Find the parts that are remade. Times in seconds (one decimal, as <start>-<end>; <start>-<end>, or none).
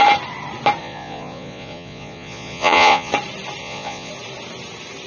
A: 0.8-3.1; 3.6-4.1